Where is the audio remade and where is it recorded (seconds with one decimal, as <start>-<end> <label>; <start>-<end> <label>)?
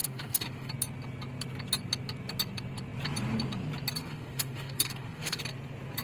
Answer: 0.0-0.7 remade; 0.7-4.0 recorded; 4.0-5.4 remade; 5.4-6.0 recorded